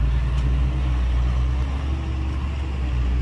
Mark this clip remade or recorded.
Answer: recorded